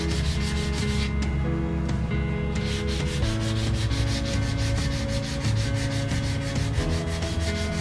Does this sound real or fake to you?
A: real